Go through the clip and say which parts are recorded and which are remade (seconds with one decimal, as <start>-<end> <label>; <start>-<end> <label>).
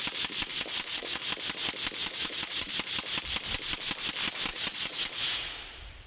0.0-0.5 recorded; 0.5-1.2 remade; 1.2-2.0 recorded; 2.0-2.7 remade; 2.7-4.5 recorded; 4.5-5.6 remade; 5.6-6.1 recorded